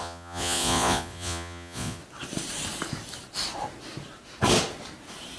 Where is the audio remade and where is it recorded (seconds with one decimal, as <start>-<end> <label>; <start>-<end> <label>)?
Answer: 0.0-2.0 remade; 2.0-5.4 recorded